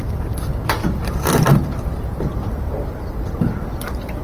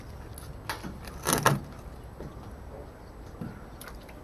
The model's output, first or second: first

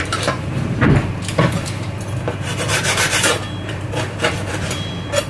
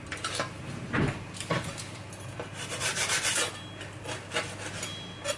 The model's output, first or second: first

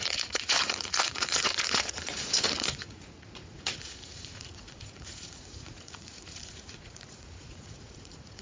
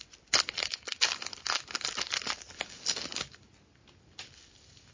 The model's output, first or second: first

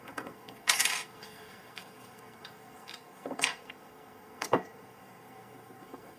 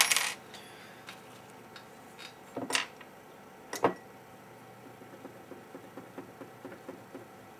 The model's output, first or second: first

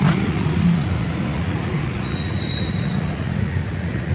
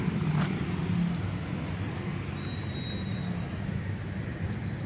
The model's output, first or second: first